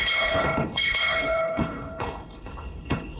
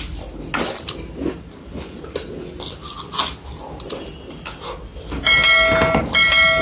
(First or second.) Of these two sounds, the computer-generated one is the first